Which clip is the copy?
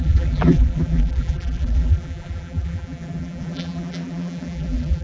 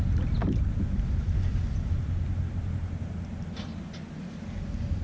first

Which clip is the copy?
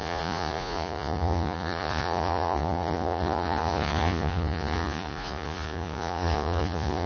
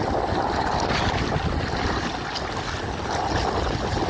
first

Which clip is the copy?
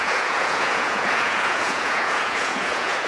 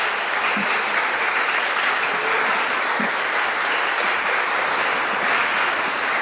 first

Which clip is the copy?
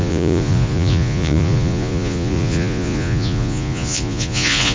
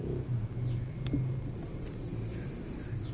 first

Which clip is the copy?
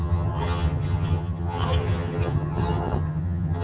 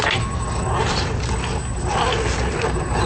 first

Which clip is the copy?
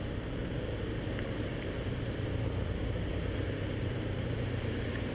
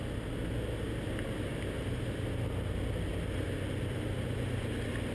first